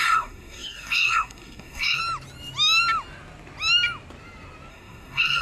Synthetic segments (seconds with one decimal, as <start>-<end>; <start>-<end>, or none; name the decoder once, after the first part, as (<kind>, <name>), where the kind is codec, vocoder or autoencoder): 0.0-2.0 (codec, SNAC); 4.7-5.4